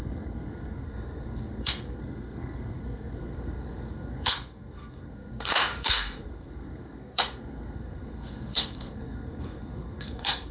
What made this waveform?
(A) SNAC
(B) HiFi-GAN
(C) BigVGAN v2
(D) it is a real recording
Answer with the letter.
A